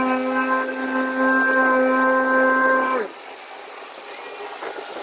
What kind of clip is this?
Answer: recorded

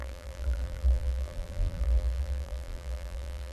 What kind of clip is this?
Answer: remade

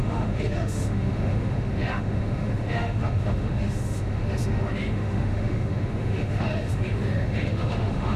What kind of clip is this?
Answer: remade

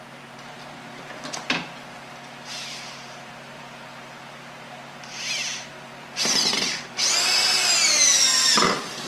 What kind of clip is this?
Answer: remade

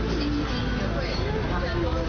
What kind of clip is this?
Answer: recorded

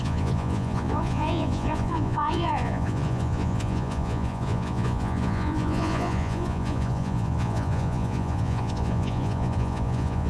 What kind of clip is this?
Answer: remade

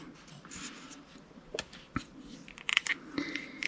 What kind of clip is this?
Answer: recorded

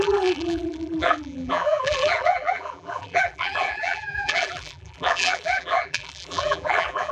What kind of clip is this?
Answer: remade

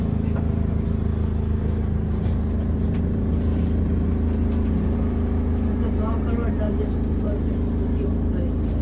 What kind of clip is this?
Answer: remade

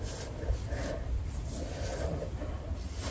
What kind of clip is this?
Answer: recorded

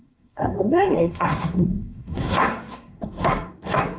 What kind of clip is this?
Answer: remade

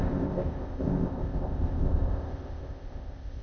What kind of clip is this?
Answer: remade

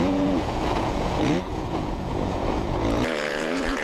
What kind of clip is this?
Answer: remade